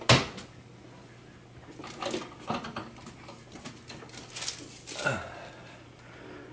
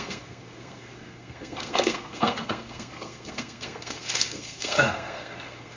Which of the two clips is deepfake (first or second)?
second